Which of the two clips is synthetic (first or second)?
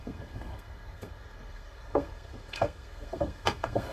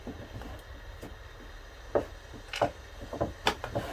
first